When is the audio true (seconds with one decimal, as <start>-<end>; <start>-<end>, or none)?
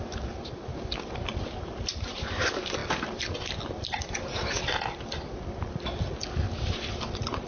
0.7-1.4; 2.8-6.3